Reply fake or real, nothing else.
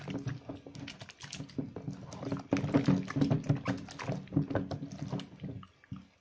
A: real